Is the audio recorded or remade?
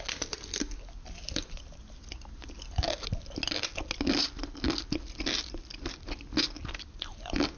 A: recorded